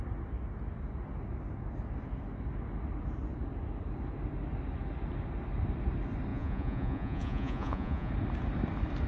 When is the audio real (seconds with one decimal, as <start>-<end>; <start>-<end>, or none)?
0.0-6.3; 8.1-9.1